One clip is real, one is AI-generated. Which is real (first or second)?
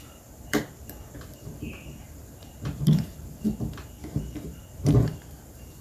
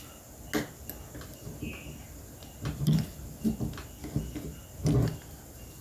second